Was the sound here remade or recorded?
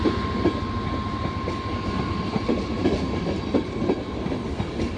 recorded